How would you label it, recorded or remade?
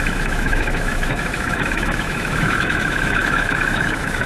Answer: remade